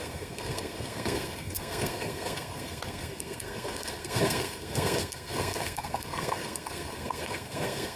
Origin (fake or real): fake